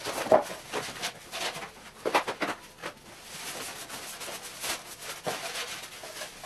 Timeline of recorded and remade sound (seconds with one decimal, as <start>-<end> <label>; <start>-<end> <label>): 0.0-6.5 recorded